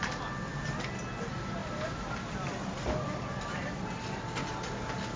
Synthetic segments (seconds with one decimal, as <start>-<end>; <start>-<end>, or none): none